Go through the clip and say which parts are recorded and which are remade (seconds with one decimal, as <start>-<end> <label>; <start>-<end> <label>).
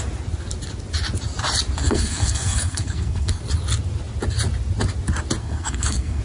0.0-1.8 recorded; 1.8-3.4 remade; 3.4-5.4 recorded; 5.4-6.2 remade